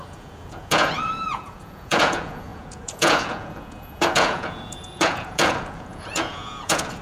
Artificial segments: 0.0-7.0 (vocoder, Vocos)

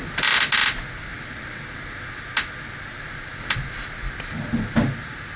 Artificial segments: none

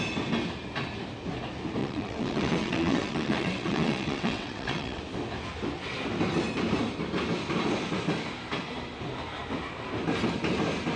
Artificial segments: 1.8-5.0 (vocoder, WaveNeXt)

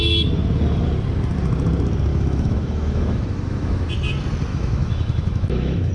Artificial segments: 2.1-3.9 (autoencoder, DAC-VAE); 4.5-5.9

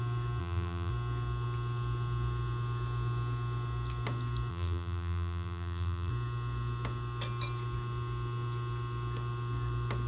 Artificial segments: 0.4-0.9 (vocoder, BigVGAN v2); 4.5-6.1

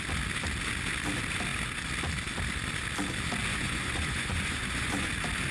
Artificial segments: 3.5-5.1 (vocoder, Vocos)